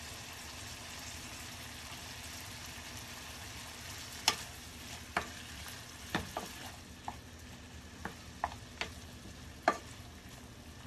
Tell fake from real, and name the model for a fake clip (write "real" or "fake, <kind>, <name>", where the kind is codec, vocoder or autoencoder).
real